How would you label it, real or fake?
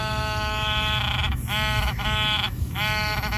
fake